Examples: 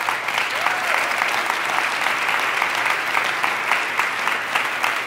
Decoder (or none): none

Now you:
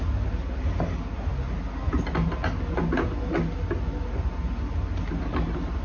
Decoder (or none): none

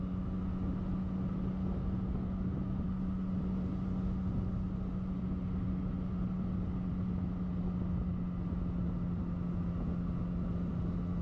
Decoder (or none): none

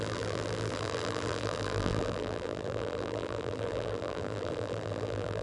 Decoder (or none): vocoder, BigVGAN v2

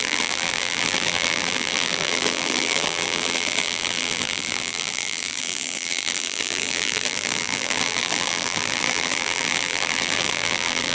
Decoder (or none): vocoder, BigVGAN v2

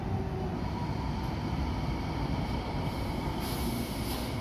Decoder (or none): none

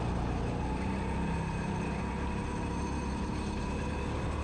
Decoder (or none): none